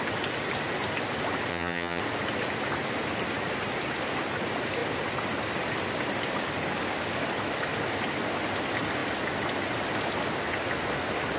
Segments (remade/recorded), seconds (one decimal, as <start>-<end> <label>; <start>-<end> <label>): 0.0-1.5 recorded; 1.5-2.0 remade; 2.0-11.4 recorded